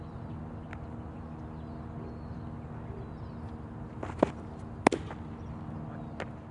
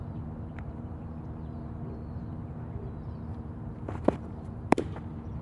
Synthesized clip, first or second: second